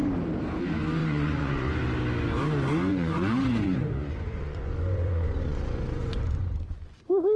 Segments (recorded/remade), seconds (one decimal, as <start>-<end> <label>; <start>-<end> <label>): 0.0-1.0 recorded; 1.0-1.7 remade; 1.7-2.9 recorded; 2.9-7.4 remade